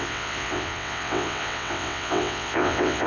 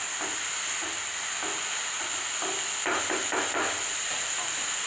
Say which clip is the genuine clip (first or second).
second